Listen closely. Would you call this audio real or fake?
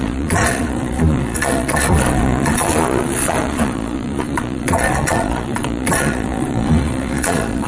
fake